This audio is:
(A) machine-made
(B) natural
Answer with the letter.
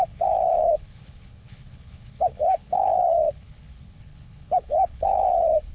A